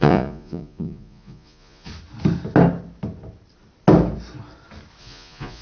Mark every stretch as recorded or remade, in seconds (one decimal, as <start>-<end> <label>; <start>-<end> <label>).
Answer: 0.0-1.9 remade; 1.9-5.0 recorded; 5.0-5.6 remade